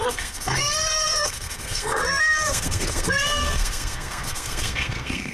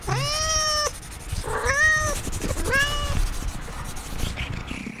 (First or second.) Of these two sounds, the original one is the second